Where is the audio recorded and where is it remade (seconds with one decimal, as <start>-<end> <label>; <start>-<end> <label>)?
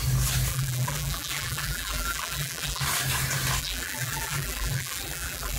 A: 0.0-0.5 recorded; 0.5-2.8 remade; 2.8-3.6 recorded; 3.6-5.6 remade